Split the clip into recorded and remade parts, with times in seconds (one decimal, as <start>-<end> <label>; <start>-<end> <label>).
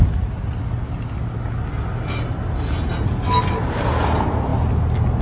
0.0-5.2 recorded